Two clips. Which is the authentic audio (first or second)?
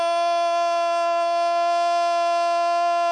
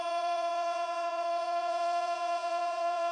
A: first